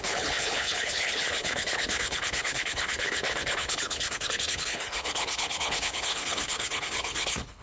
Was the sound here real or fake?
fake